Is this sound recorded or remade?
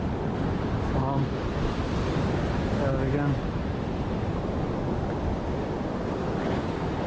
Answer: recorded